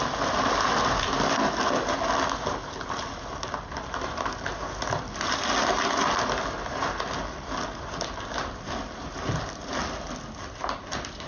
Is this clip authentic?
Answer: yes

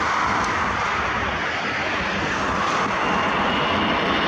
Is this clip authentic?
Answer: yes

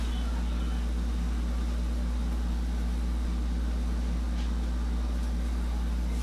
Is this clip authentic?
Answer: yes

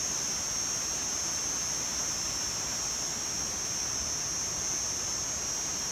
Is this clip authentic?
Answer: yes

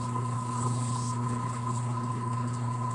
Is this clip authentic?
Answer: no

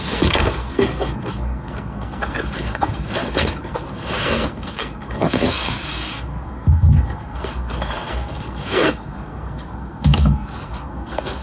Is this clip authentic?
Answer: no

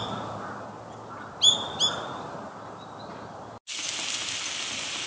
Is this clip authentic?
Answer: yes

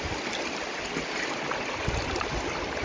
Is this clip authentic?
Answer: yes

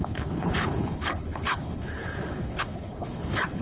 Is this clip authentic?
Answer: no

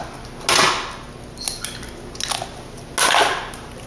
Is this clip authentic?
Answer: yes